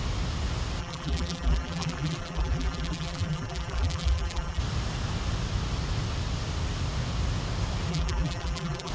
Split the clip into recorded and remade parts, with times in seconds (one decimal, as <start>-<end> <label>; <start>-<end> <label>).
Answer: 0.0-0.8 recorded; 0.8-4.6 remade; 4.6-7.9 recorded; 7.9-8.9 remade